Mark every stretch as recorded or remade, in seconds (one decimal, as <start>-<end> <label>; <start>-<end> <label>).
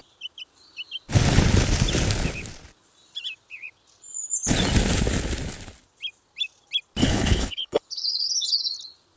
0.0-7.0 recorded; 7.0-7.8 remade; 7.8-9.2 recorded